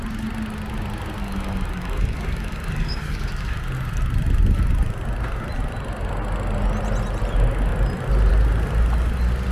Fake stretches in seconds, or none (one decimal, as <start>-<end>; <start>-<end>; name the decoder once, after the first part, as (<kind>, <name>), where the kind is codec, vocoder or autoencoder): 1.2-3.6 (codec, DAC)